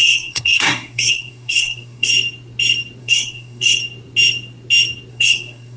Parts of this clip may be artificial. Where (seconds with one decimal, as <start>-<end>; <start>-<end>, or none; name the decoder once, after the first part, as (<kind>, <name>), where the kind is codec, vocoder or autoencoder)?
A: 0.0-2.1 (codec, SNAC); 3.0-3.8; 5.1-5.8